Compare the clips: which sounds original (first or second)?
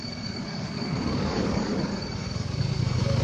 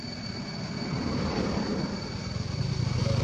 second